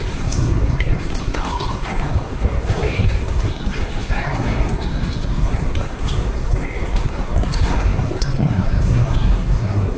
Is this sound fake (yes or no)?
yes